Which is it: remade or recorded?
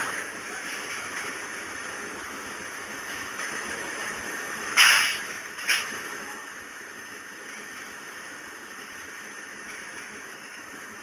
remade